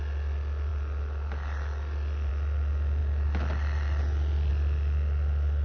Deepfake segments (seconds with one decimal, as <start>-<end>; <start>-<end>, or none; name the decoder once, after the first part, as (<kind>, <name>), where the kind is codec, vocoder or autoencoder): none